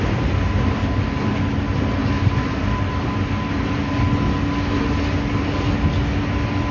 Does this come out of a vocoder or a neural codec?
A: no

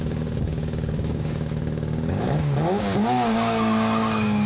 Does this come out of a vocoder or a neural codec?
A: yes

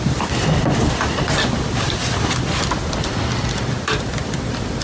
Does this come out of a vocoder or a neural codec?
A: yes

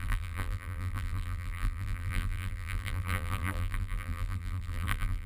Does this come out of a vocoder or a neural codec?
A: yes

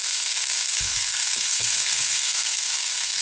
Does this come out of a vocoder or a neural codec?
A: yes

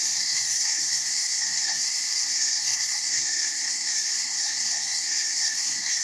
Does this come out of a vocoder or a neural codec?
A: yes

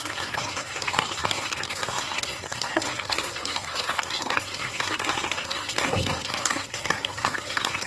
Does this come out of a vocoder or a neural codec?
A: yes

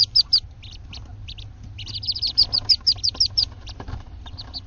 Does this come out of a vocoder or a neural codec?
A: no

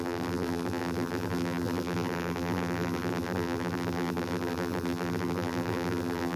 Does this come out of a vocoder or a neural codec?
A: yes